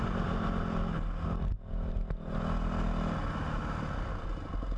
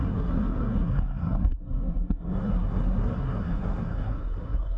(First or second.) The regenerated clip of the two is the second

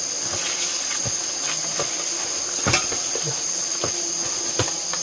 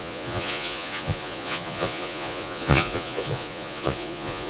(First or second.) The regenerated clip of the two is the second